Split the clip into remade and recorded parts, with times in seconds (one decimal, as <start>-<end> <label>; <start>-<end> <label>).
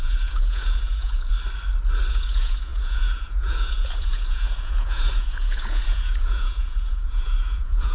0.0-1.3 remade; 1.3-2.1 recorded; 2.1-7.9 remade